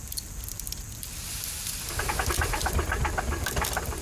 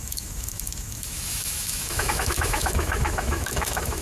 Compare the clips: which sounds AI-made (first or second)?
second